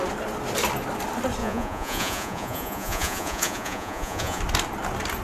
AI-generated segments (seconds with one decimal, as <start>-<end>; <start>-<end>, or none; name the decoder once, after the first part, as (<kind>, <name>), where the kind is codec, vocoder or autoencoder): 1.4-4.4 (vocoder, Vocos)